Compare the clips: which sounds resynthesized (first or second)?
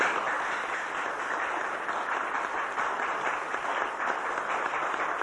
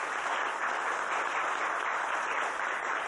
first